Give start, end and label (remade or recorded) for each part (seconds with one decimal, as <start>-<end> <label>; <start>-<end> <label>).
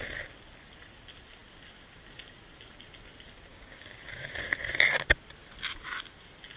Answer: 0.0-3.5 recorded; 3.5-4.4 remade; 4.4-6.6 recorded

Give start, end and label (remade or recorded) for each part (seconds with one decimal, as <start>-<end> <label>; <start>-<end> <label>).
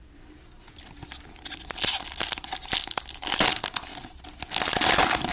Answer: 0.0-5.3 recorded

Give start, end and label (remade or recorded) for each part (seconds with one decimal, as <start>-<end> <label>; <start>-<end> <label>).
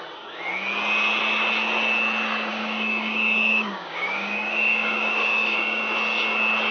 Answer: 0.0-2.5 recorded; 2.5-5.8 remade; 5.8-6.7 recorded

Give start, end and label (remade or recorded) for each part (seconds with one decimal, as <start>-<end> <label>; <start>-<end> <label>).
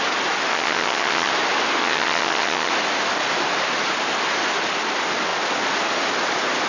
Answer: 0.0-0.5 recorded; 0.5-1.3 remade; 1.3-1.8 recorded; 1.8-2.7 remade; 2.7-6.7 recorded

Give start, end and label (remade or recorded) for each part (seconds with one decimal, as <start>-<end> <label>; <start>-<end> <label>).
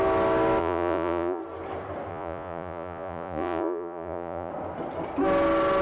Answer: 0.0-0.6 recorded; 0.6-1.4 remade; 1.4-2.1 recorded; 2.1-4.5 remade; 4.5-5.8 recorded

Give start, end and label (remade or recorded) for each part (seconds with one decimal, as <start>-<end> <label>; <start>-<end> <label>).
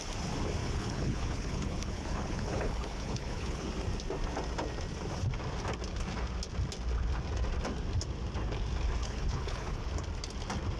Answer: 0.0-0.6 recorded; 0.6-3.7 remade; 3.7-9.0 recorded; 9.0-9.9 remade; 9.9-10.8 recorded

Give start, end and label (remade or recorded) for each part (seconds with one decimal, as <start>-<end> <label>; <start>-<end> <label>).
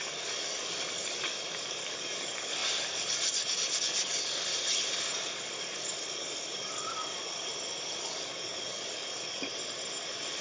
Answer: 0.0-4.5 remade; 4.5-5.2 recorded; 5.2-7.5 remade; 7.5-8.0 recorded; 8.0-9.5 remade; 9.5-10.4 recorded